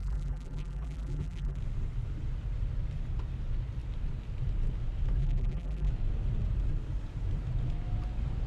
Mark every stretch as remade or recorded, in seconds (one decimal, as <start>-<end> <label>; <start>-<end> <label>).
0.0-1.6 remade; 1.6-5.2 recorded; 5.2-5.9 remade; 5.9-8.5 recorded